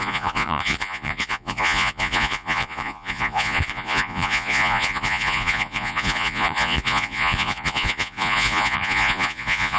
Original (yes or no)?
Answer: no